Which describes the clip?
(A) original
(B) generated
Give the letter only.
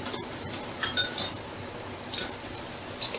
A